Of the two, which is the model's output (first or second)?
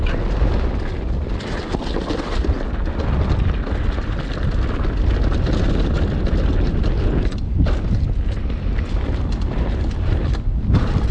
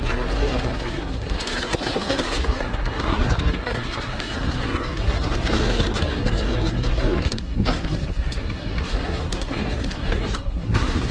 second